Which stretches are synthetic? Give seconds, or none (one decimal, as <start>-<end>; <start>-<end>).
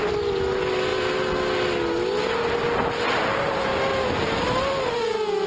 none